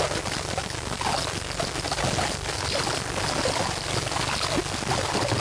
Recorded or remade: recorded